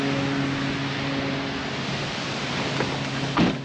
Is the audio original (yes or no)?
yes